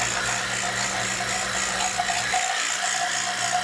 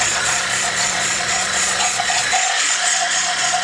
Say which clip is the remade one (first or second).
second